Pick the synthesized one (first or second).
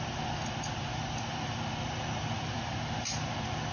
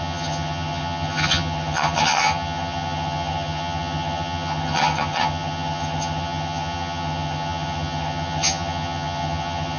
second